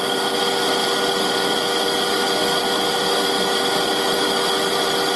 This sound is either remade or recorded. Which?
recorded